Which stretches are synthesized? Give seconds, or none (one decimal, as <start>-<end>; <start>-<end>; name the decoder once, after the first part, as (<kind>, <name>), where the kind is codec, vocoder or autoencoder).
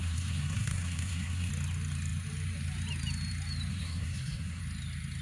0.0-1.5 (codec, SNAC); 3.7-4.6